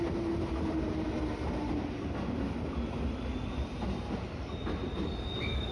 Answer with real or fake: real